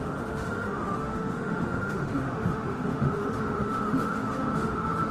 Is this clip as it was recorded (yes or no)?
no